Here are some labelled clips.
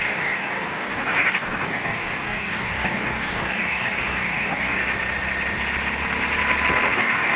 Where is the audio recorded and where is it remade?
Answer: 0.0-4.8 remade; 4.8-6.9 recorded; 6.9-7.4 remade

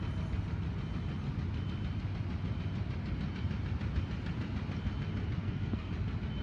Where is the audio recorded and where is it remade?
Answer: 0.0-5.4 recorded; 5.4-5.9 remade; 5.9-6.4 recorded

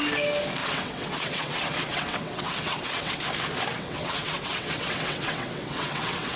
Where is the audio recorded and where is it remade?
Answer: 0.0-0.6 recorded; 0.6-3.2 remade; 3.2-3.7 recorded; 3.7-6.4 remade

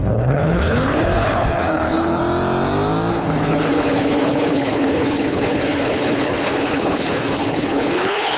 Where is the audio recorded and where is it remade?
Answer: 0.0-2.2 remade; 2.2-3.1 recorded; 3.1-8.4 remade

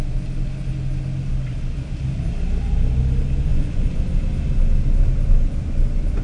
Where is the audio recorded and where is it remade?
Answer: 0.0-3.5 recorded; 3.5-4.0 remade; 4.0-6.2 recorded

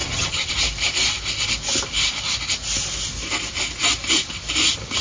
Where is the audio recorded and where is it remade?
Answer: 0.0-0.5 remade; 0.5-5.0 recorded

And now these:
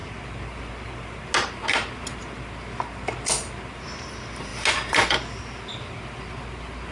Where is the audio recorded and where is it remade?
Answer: 0.0-6.9 recorded